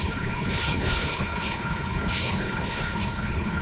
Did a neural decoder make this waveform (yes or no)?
yes